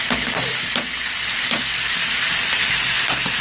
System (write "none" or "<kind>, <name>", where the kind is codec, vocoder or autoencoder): none